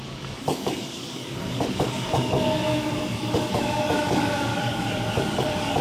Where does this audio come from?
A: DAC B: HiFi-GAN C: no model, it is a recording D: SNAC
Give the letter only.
A